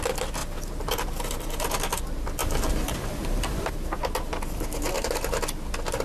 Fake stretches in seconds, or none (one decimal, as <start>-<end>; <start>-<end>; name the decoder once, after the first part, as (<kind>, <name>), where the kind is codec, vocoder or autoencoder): 0.4-1.3 (vocoder, BigVGAN v2); 2.4-4.0